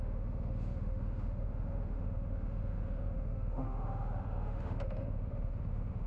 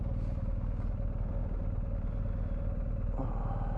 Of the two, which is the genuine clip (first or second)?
second